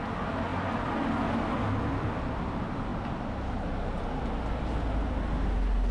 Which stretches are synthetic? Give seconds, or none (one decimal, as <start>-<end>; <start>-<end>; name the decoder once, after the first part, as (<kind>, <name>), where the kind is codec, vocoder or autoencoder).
none